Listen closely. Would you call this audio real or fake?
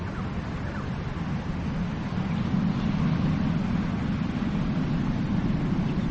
real